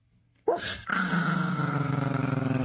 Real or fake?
real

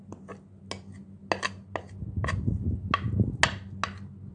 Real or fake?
real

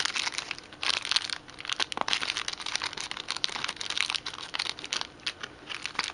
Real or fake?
real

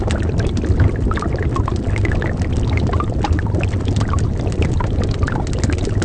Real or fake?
real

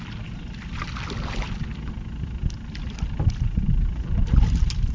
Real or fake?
real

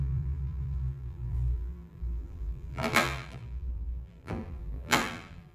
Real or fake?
fake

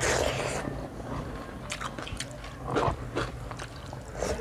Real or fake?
real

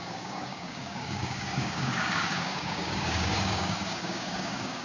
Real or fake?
fake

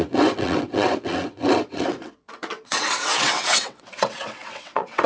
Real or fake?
fake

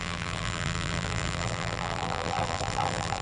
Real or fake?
fake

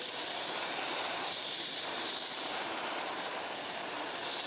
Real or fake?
fake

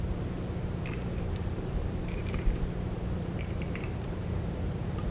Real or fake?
fake